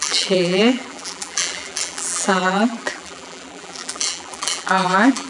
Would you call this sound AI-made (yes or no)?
yes